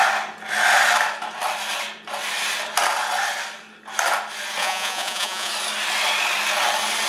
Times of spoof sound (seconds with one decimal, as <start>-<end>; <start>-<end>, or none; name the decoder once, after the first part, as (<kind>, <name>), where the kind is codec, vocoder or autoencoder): 4.6-5.5 (vocoder, Vocos)